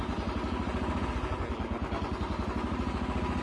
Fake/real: real